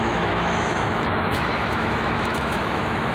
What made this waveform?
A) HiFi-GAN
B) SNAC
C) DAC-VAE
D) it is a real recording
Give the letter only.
C